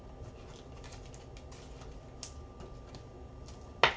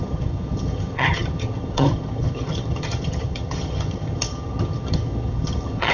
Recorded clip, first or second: first